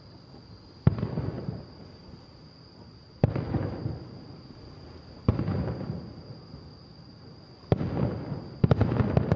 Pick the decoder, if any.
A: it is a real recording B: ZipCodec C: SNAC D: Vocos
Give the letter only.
A